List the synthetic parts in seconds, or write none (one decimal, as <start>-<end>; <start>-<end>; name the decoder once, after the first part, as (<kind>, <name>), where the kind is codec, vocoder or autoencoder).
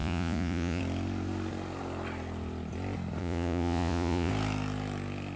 0.0-0.8 (vocoder, Vocos); 3.2-4.3